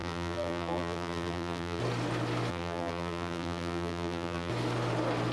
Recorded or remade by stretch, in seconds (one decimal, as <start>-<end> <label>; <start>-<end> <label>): 0.0-1.8 remade; 1.8-2.5 recorded; 2.5-4.5 remade; 4.5-5.3 recorded